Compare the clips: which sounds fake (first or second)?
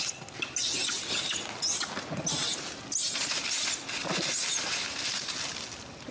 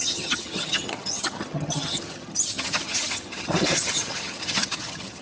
second